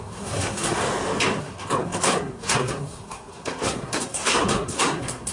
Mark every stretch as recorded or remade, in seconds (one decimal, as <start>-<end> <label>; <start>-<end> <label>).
0.0-0.8 remade; 0.8-1.4 recorded; 1.4-5.3 remade

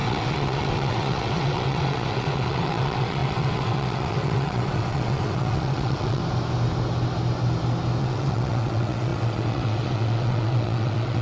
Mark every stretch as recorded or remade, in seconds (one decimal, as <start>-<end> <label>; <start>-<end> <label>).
0.0-6.2 remade; 6.2-8.0 recorded; 8.0-11.2 remade

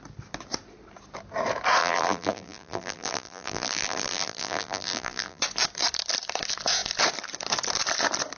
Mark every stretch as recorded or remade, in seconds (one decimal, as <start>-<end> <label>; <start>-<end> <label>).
0.0-1.8 recorded; 1.8-5.4 remade; 5.4-8.4 recorded

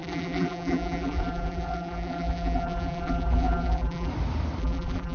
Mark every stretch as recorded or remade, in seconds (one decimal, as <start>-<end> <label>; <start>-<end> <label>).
0.0-4.1 remade; 4.1-4.6 recorded; 4.6-5.1 remade

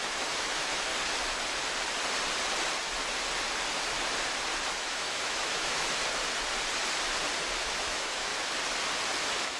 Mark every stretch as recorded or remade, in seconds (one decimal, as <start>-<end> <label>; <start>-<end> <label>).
0.0-0.9 remade; 0.9-4.7 recorded; 4.7-6.0 remade; 6.0-7.6 recorded; 7.6-8.3 remade; 8.3-9.2 recorded; 9.2-9.6 remade

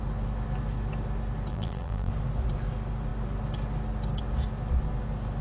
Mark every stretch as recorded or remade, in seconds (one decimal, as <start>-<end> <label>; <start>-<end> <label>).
0.0-1.5 recorded; 1.5-2.1 remade; 2.1-5.4 recorded

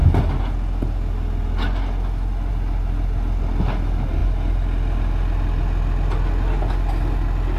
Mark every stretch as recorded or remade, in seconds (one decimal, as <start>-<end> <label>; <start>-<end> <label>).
0.0-7.6 recorded

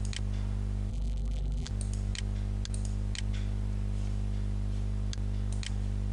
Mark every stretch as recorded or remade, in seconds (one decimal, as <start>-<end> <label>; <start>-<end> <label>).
0.0-0.9 recorded; 0.9-1.7 remade; 1.7-6.1 recorded